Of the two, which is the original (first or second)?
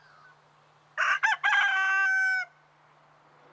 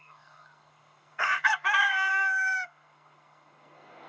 first